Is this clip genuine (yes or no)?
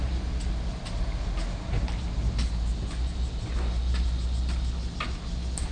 yes